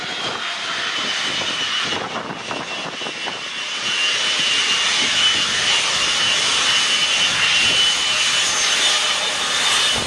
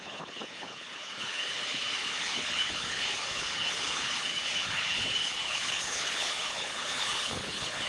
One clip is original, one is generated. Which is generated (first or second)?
second